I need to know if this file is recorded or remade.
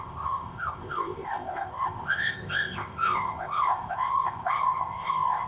remade